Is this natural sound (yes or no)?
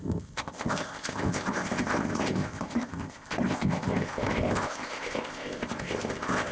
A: no